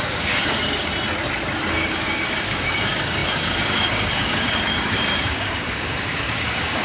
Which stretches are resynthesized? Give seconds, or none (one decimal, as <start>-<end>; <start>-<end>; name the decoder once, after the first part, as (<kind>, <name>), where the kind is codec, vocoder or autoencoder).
0.0-0.9 (codec, DAC); 1.7-6.8